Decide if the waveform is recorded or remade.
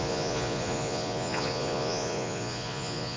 remade